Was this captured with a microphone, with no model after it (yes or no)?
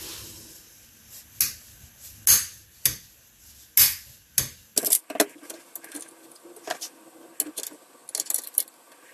yes